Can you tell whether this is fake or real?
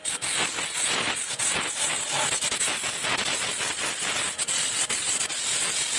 real